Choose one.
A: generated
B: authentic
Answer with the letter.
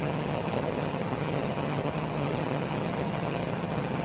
A